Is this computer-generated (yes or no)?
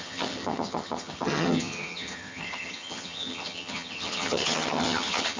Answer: yes